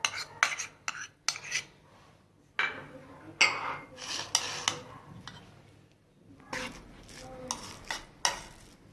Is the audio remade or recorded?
recorded